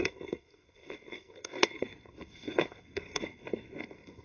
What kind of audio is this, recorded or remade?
remade